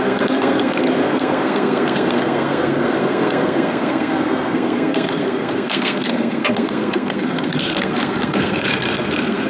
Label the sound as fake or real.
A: fake